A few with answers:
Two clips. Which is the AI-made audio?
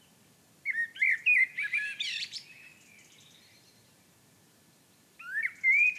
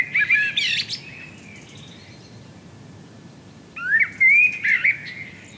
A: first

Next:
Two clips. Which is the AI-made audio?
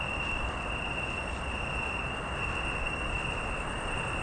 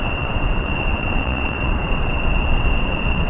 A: second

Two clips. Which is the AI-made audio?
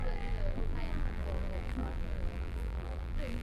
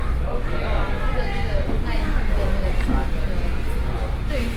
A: first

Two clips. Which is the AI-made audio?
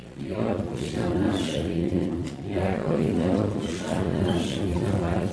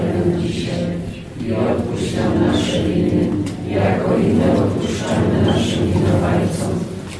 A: first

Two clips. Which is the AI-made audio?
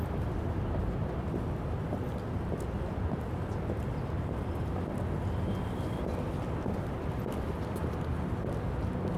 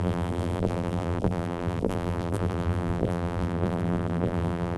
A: second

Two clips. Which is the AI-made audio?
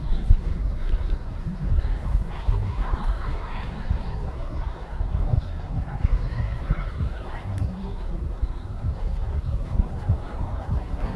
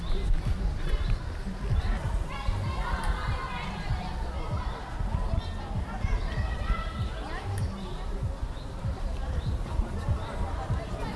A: first